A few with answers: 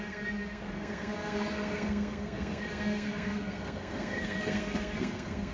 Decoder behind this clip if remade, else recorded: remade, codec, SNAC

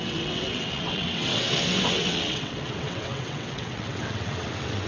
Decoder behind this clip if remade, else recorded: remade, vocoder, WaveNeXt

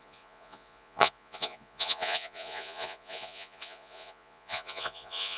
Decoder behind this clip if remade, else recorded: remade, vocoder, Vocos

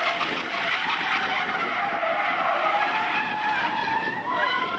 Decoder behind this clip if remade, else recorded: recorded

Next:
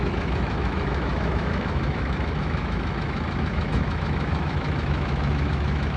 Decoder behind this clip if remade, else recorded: remade, autoencoder, DAC-VAE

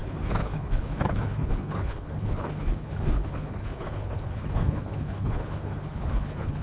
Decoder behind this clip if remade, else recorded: remade, codec, HILCodec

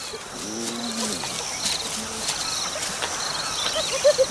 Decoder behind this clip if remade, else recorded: recorded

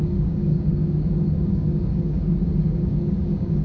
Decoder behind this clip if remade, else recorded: remade, codec, DAC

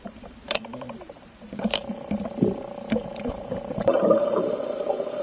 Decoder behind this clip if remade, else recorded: remade, vocoder, BigVGAN v2